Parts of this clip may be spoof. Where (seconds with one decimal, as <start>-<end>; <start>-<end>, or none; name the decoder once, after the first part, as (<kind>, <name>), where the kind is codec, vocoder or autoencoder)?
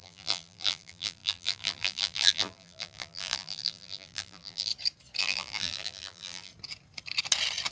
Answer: 0.0-4.7 (vocoder, BigVGAN v2); 5.2-6.5